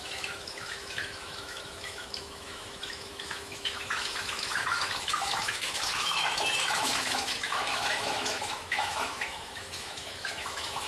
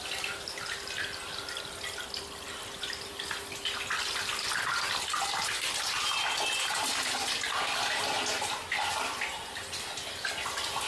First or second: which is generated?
first